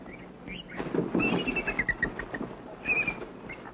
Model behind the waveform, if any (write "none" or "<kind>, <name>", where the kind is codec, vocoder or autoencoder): none